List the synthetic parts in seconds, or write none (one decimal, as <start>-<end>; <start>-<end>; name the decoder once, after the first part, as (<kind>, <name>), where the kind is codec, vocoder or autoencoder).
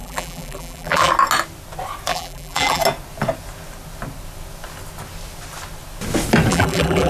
0.0-1.1 (vocoder, BigVGAN v2); 2.1-2.8; 6.5-7.1